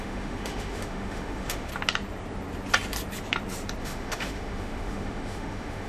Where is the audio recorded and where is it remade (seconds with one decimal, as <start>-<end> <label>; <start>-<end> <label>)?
0.0-1.7 remade; 1.7-3.8 recorded; 3.8-5.9 remade